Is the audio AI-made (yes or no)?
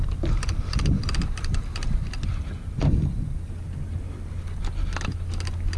no